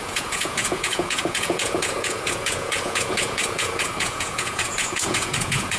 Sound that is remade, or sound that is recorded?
remade